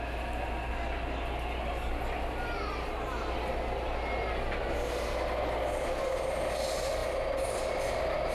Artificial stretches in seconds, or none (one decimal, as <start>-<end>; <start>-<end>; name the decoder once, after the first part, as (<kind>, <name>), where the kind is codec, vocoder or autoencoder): none